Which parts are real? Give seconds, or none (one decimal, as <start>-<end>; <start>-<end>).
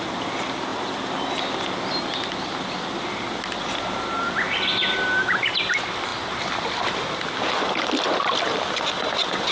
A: 0.0-9.5